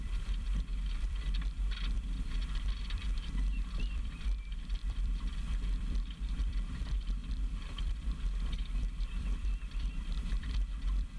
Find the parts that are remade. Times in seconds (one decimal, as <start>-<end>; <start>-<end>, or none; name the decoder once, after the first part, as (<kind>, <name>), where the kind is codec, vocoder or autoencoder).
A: 0.0-11.2 (vocoder, BigVGAN v2)